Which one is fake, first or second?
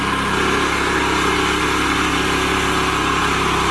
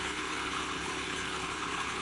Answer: second